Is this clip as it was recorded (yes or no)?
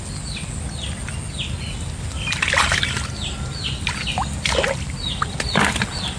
yes